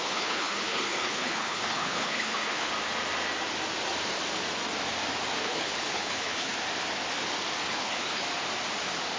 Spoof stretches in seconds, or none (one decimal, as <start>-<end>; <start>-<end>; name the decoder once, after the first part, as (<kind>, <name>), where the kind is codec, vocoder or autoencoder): 0.0-2.7 (codec, HILCodec); 5.4-6.5; 7.7-8.2